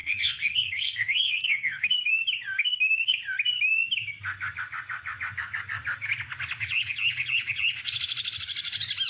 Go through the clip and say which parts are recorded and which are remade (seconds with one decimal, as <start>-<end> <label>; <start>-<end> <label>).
0.0-2.1 remade; 2.1-2.6 recorded; 2.6-3.2 remade; 3.2-9.1 recorded